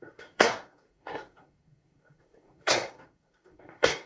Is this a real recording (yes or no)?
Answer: no